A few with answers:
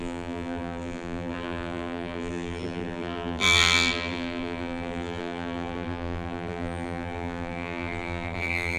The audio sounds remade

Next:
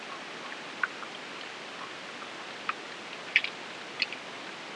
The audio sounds recorded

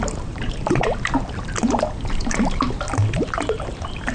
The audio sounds remade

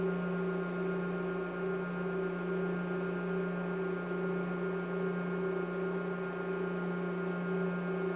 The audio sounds recorded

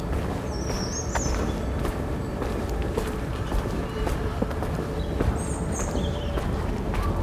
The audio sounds recorded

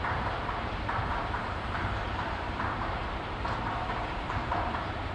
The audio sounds remade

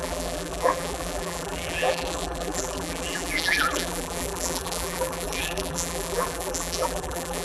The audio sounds remade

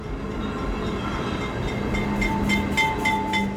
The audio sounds recorded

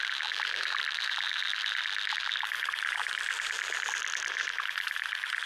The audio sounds remade